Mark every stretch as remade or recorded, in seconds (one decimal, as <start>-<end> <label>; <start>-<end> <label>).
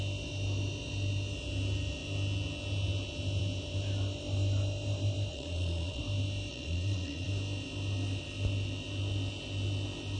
0.0-5.3 recorded; 5.3-6.0 remade; 6.0-6.5 recorded; 6.5-7.3 remade; 7.3-10.2 recorded